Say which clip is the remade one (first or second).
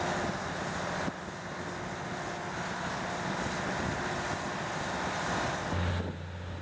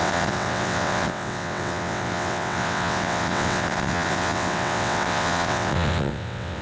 second